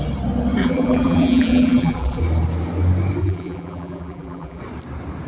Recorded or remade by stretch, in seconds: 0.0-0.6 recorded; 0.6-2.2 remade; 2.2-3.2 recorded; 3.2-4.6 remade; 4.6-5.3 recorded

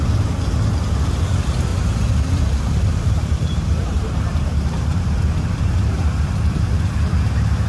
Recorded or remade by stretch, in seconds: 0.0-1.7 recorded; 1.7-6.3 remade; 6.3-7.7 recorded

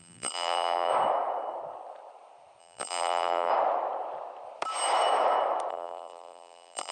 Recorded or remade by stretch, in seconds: 0.0-0.9 remade; 0.9-2.6 recorded; 2.6-3.5 remade; 3.5-5.7 recorded; 5.7-6.9 remade

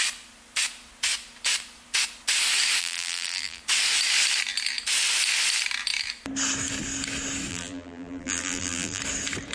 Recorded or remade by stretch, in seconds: 0.0-2.8 recorded; 2.8-3.6 remade; 3.6-7.5 recorded; 7.5-9.0 remade; 9.0-9.5 recorded

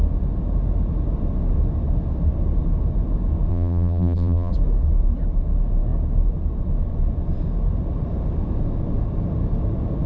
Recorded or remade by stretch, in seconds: 0.0-3.5 recorded; 3.5-4.5 remade; 4.5-10.1 recorded

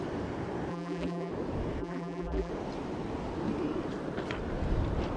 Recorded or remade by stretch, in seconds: 0.0-0.7 recorded; 0.7-1.3 remade; 1.3-1.8 recorded; 1.8-2.5 remade; 2.5-5.2 recorded